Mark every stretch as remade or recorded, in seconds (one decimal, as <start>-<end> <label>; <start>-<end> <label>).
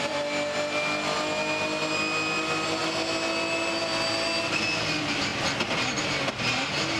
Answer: 0.0-7.0 recorded